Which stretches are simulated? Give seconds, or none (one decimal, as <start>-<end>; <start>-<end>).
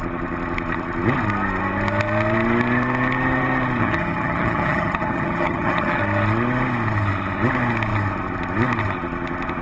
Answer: 3.8-6.0